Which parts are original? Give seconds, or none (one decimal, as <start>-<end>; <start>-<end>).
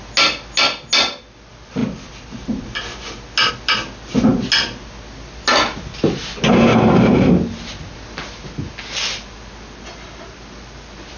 0.0-11.2